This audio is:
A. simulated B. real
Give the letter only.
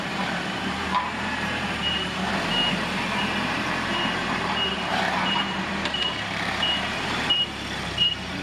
A